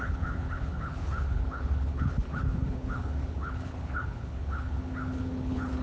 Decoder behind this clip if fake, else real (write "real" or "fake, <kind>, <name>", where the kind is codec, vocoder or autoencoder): fake, codec, HILCodec